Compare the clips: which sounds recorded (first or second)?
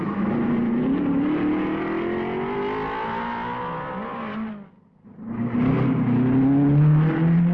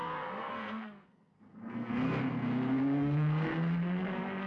first